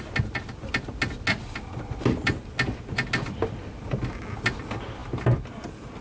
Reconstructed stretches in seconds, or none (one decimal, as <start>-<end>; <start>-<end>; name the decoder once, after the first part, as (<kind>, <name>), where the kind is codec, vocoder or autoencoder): none